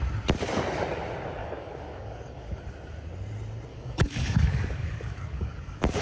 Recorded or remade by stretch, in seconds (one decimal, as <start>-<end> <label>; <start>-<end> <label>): 0.0-1.4 recorded; 1.4-2.7 remade; 2.7-3.7 recorded; 3.7-6.0 remade